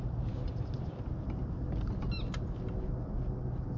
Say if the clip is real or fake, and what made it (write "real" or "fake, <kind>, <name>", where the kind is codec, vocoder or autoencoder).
real